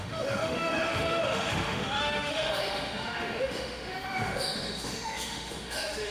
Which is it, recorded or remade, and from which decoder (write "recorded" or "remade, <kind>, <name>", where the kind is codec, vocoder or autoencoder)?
remade, autoencoder, DAC-VAE